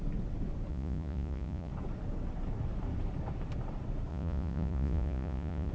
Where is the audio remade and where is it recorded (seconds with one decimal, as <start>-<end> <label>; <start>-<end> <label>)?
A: 0.0-0.7 recorded; 0.7-1.7 remade; 1.7-4.1 recorded; 4.1-5.7 remade